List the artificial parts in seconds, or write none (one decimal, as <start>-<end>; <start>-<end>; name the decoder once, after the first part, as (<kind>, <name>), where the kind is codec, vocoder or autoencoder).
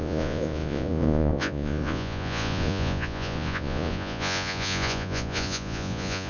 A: 0.0-6.3 (vocoder, Vocos)